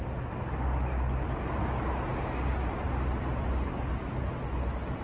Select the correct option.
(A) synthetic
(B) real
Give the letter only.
B